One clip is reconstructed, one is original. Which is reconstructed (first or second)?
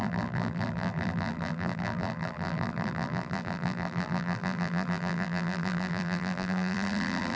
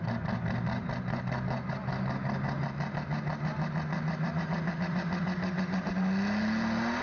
first